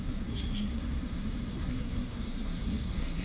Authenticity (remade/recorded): remade